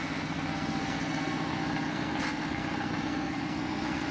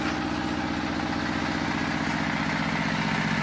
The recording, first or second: second